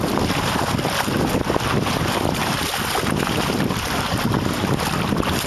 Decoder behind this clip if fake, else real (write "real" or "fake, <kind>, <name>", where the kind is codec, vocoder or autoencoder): real